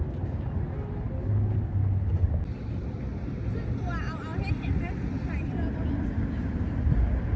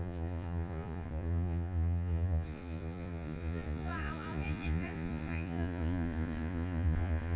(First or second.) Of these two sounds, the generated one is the second